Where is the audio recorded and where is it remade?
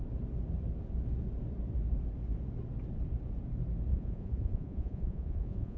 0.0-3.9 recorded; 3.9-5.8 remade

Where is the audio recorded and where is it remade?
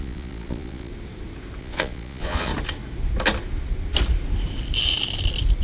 0.0-0.9 remade; 0.9-1.6 recorded; 1.6-2.5 remade; 2.5-5.6 recorded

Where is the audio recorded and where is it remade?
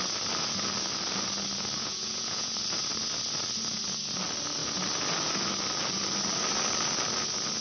0.0-1.8 recorded; 1.8-2.5 remade; 2.5-7.6 recorded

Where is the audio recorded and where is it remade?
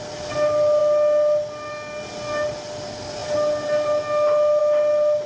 0.0-5.3 recorded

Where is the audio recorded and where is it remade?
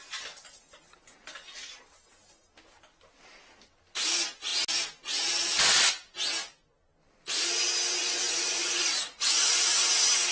0.0-8.0 recorded; 8.0-9.9 remade; 9.9-10.3 recorded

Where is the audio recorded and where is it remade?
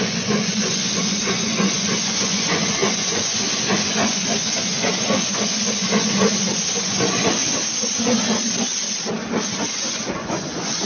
0.0-7.4 remade; 7.4-9.7 recorded; 9.7-10.9 remade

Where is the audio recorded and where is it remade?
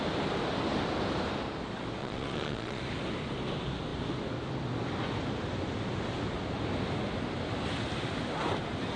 0.0-2.0 recorded; 2.0-2.8 remade; 2.8-9.0 recorded